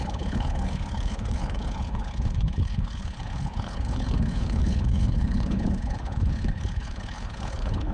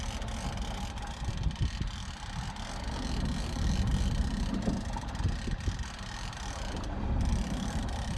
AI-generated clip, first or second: first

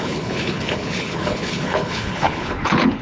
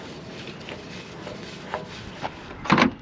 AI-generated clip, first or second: first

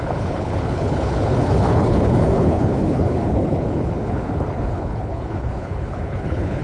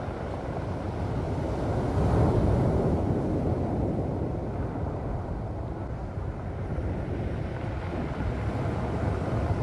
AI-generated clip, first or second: first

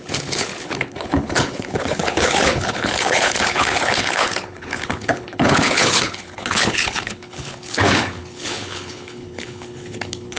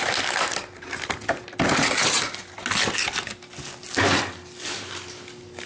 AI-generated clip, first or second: first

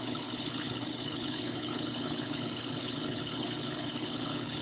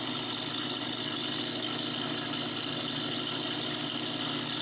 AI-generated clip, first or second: first